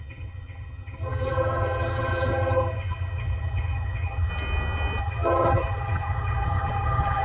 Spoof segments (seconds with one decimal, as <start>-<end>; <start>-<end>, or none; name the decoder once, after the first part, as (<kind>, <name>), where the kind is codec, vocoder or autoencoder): 0.0-4.3 (vocoder, HiFi-GAN); 5.0-7.2